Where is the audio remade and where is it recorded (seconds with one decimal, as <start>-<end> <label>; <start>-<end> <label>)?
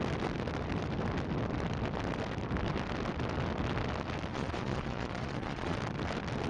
0.0-4.3 recorded; 4.3-5.8 remade; 5.8-6.5 recorded